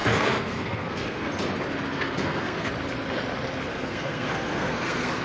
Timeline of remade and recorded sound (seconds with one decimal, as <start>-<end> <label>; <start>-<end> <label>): 0.0-1.3 remade; 1.3-1.9 recorded; 1.9-2.7 remade; 2.7-3.7 recorded; 3.7-5.2 remade